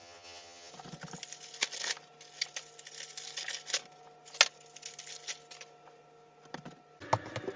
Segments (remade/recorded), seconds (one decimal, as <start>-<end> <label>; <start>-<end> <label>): 0.0-0.7 remade; 0.7-7.6 recorded